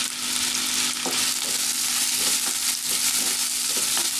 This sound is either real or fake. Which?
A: real